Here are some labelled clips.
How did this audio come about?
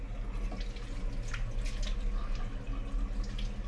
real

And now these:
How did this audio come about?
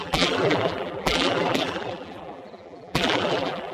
fake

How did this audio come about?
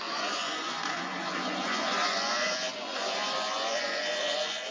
fake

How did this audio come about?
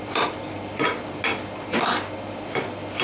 real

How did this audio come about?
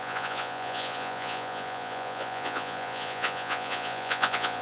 fake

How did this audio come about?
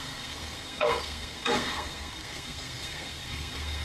fake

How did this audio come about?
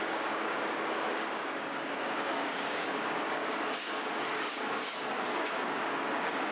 fake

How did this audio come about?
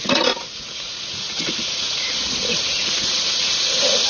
fake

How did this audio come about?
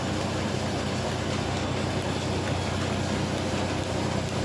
real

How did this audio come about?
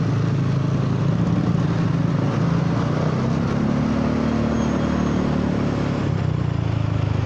real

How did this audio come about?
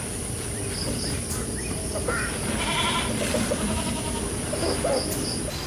real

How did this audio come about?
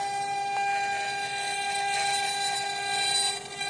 real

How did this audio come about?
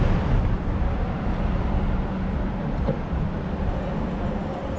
real